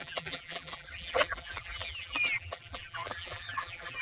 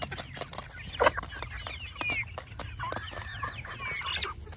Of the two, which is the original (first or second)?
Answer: second